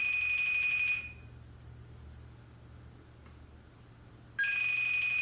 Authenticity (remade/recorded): recorded